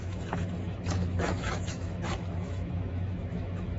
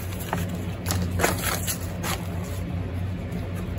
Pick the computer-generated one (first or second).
first